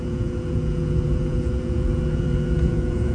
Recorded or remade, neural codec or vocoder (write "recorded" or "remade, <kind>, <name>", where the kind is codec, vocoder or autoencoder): remade, vocoder, Vocos